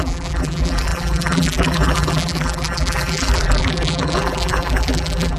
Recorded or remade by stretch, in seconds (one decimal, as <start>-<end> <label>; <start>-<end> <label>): 0.0-5.4 remade